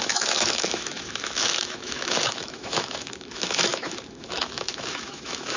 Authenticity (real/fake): fake